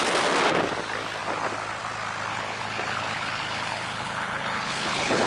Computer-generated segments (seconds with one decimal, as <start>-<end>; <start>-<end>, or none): 2.3-5.3